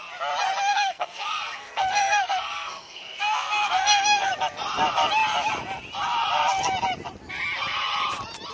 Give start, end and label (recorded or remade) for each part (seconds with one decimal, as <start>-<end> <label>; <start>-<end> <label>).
0.0-0.7 recorded; 0.7-4.3 remade; 4.3-8.5 recorded